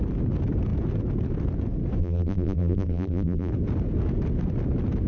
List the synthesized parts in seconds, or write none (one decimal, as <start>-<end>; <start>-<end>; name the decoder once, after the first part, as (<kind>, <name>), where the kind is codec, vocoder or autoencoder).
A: 2.0-3.5 (vocoder, BigVGAN v2)